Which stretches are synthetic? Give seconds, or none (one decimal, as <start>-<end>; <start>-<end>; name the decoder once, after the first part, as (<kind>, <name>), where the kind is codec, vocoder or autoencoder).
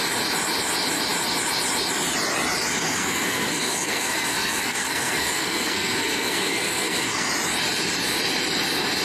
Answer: 2.8-7.3 (codec, SNAC)